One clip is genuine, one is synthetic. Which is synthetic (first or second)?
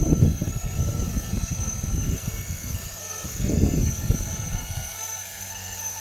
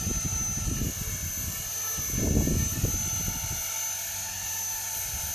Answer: first